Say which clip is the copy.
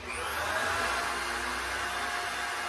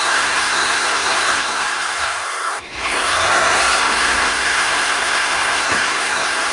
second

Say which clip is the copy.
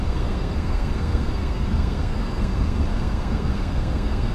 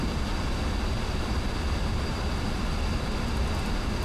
first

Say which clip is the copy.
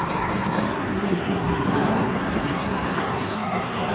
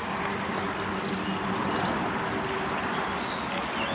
first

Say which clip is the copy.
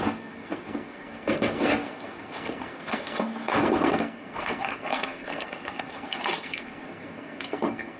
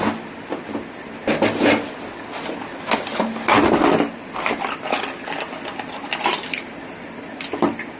first